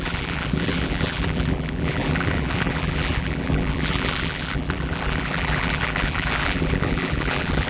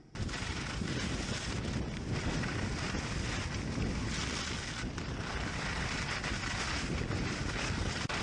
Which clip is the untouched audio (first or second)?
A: second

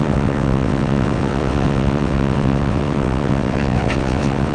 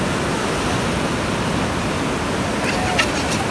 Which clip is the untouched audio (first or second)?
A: second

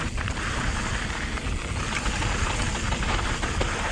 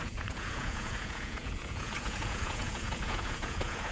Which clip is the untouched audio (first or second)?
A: first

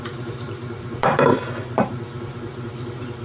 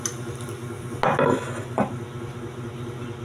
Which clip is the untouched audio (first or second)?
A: second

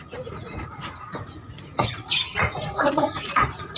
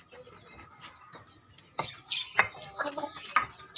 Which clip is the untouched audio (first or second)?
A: second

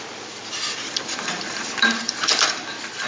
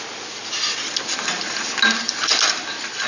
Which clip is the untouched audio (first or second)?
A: second